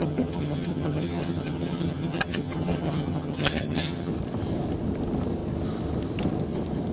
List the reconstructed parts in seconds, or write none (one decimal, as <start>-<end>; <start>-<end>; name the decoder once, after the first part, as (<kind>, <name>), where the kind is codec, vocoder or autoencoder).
0.0-4.1 (vocoder, HiFi-GAN)